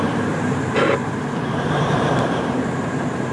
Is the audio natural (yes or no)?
no